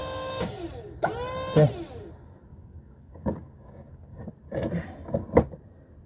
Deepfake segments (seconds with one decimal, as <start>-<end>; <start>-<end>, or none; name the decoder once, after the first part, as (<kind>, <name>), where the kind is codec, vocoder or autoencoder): 0.0-0.6 (codec, DAC); 2.5-4.3